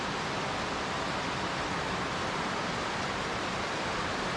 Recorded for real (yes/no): no